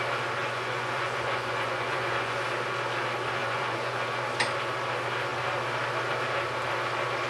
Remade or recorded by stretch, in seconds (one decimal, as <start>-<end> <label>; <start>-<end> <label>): 0.0-0.4 recorded; 0.4-2.4 remade; 2.4-3.4 recorded; 3.4-4.2 remade; 4.2-7.3 recorded